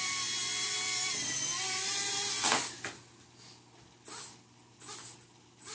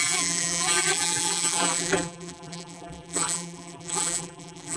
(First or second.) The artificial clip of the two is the second